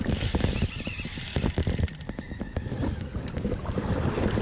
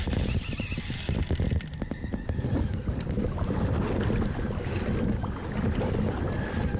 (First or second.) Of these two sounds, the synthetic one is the first